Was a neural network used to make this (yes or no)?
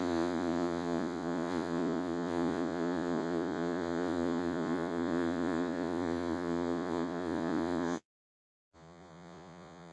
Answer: yes